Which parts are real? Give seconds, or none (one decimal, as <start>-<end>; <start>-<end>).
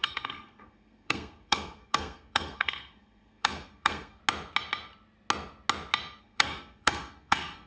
4.2-6.2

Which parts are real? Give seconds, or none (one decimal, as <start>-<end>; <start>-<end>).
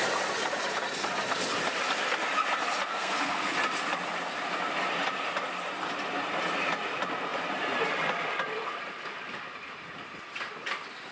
0.0-2.9; 3.5-11.1